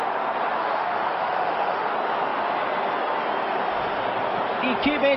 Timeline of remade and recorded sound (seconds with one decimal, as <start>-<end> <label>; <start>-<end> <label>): 0.0-0.6 recorded; 0.6-1.9 remade; 1.9-5.2 recorded